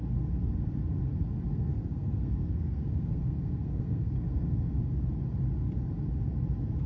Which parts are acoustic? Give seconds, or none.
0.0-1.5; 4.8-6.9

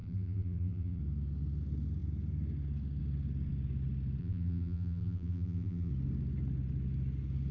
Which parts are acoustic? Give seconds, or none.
1.0-4.2; 5.9-7.5

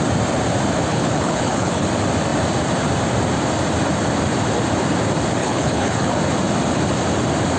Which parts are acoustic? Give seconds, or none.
0.0-0.9; 1.9-5.4; 6.2-7.6

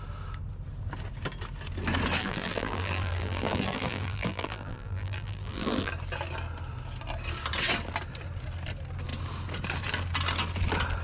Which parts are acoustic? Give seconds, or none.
0.0-2.2; 5.9-11.0

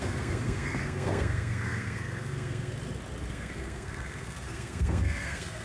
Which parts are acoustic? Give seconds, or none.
2.7-3.3